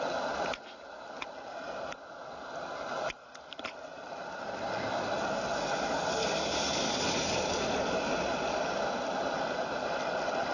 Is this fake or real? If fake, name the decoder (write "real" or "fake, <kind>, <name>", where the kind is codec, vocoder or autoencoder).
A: real